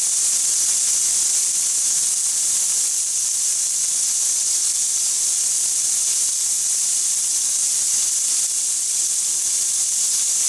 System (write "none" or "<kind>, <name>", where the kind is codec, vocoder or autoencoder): none